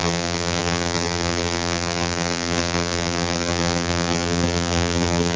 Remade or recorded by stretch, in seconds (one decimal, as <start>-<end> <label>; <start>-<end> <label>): 0.0-5.4 remade